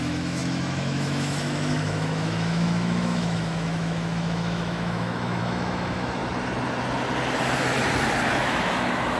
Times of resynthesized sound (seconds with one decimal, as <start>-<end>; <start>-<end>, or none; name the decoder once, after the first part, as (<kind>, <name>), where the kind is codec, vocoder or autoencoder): 0.0-6.2 (autoencoder, DAC-VAE); 8.3-9.2